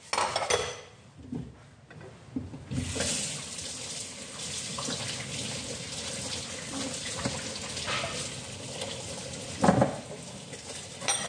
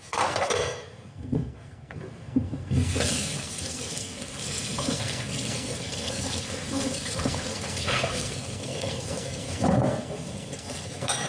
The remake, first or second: second